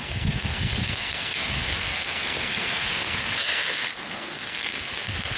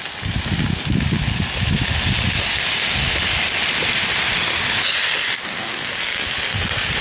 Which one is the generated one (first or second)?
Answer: first